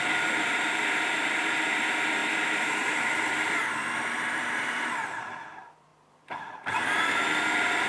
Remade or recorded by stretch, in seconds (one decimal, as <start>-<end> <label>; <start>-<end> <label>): 0.0-7.9 remade